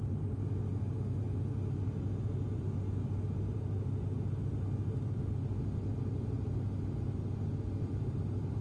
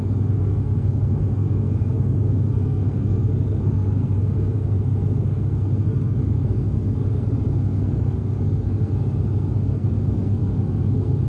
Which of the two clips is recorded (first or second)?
first